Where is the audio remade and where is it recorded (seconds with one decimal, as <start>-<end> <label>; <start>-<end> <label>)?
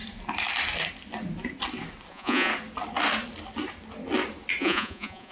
0.0-2.1 recorded; 2.1-2.5 remade; 2.5-4.6 recorded; 4.6-5.3 remade